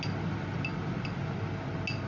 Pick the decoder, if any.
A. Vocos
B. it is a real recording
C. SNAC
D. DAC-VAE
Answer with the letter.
B